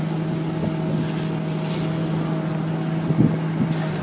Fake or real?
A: real